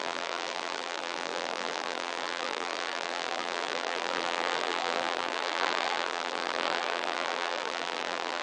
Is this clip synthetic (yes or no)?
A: yes